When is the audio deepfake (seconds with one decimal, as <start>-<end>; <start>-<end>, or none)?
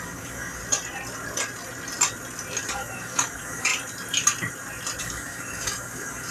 0.0-0.6; 2.7-3.7; 5.0-6.3